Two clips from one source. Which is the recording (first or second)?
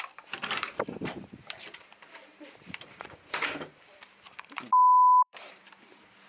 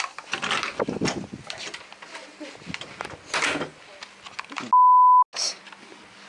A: second